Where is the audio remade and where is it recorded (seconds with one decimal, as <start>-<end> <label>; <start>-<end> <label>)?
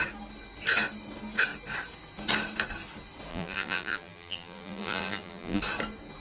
0.0-3.3 recorded; 3.3-5.6 remade; 5.6-6.2 recorded